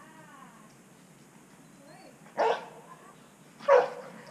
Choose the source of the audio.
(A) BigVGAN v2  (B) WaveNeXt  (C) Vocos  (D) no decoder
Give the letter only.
D